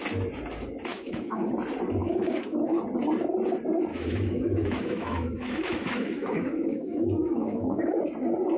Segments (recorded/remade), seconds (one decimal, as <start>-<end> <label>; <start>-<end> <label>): 0.0-0.9 recorded; 0.9-1.5 remade; 1.5-2.0 recorded; 2.0-2.8 remade; 2.8-3.9 recorded; 3.9-8.0 remade; 8.0-8.6 recorded